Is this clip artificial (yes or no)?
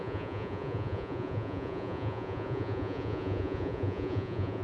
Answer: yes